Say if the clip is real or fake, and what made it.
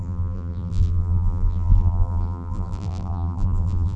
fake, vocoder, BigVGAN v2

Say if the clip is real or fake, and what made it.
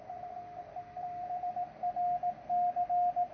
real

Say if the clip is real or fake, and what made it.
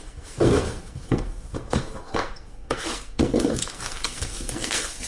fake, codec, SNAC